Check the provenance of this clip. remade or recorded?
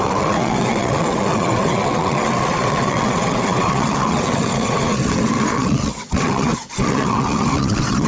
remade